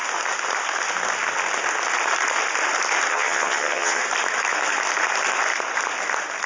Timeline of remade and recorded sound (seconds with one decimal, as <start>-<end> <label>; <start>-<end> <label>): 0.0-3.1 recorded; 3.1-4.0 remade; 4.0-6.5 recorded